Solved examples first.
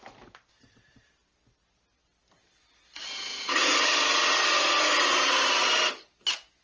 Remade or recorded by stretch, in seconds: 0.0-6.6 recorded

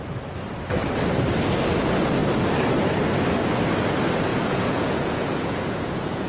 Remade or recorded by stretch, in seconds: 0.0-4.3 recorded; 4.3-6.3 remade

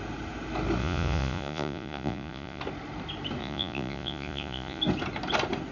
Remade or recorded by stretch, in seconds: 0.0-0.8 recorded; 0.8-2.6 remade; 2.6-3.4 recorded; 3.4-4.8 remade; 4.8-5.7 recorded

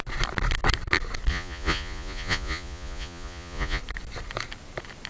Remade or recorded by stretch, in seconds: 0.0-1.3 recorded; 1.3-3.8 remade; 3.8-5.1 recorded

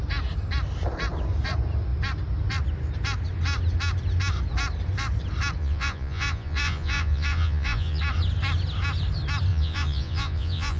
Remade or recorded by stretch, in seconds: 0.0-5.6 recorded; 5.6-8.0 remade; 8.0-9.5 recorded; 9.5-10.8 remade